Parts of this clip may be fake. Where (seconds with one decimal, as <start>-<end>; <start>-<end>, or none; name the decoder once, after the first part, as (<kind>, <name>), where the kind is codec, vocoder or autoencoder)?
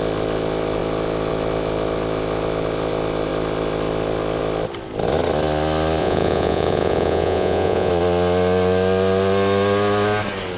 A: 6.0-7.9 (vocoder, Vocos)